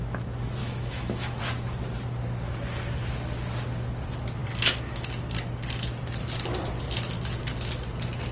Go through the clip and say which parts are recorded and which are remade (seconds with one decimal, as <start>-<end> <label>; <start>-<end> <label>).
0.0-0.6 recorded; 0.6-1.4 remade; 1.4-8.3 recorded